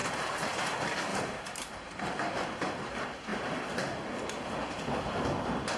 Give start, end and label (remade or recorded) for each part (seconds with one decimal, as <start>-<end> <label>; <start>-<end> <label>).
0.0-0.6 remade; 0.6-1.1 recorded; 1.1-1.9 remade; 1.9-5.8 recorded